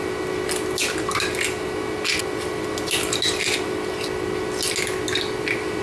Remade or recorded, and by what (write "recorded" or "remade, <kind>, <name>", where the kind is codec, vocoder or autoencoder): recorded